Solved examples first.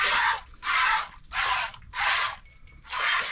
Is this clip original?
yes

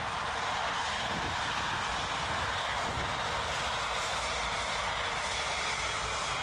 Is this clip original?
yes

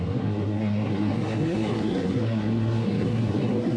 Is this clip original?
no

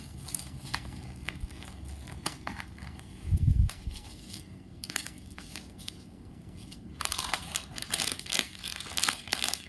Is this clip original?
no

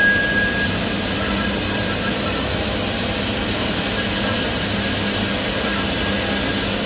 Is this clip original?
yes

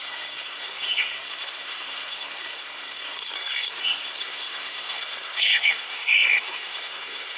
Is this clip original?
no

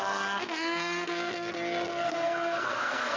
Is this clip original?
no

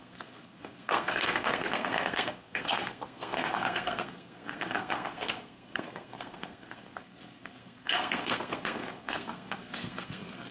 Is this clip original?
no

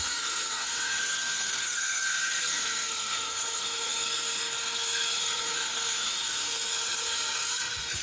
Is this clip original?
no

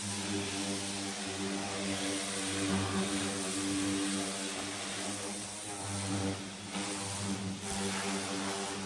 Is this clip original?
yes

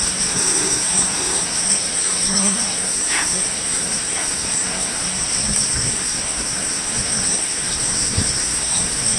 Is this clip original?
no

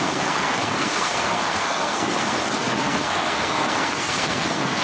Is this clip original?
no